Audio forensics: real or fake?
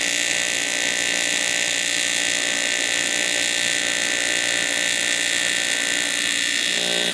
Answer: real